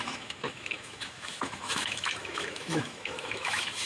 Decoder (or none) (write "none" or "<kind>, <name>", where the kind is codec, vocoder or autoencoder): autoencoder, DAC-VAE